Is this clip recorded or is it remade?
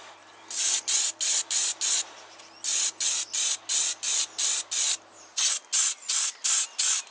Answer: recorded